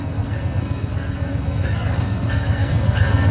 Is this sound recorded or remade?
remade